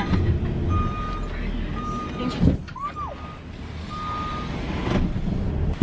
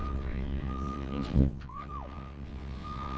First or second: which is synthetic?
second